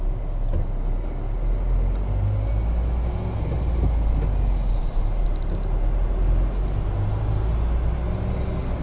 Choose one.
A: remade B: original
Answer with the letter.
B